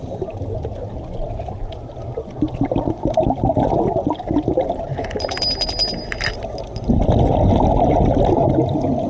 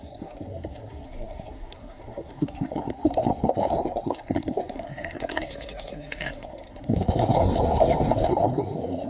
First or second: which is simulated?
second